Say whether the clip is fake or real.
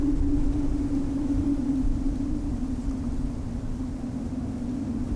real